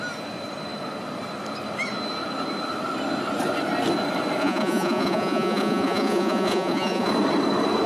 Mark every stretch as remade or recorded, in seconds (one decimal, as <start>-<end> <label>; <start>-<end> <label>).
0.0-4.4 recorded; 4.4-7.1 remade; 7.1-7.9 recorded